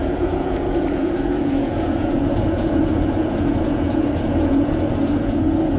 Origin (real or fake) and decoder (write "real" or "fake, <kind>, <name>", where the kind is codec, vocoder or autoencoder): fake, vocoder, Vocos